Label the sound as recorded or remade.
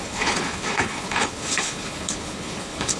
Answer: remade